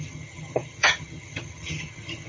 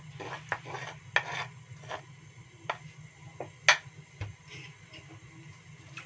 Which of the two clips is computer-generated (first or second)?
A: first